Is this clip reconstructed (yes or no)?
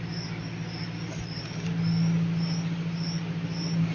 no